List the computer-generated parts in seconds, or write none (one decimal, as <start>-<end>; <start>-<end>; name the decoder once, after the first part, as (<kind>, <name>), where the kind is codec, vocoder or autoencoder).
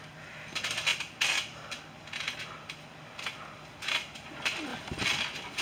4.7-5.6 (vocoder, BigVGAN v2)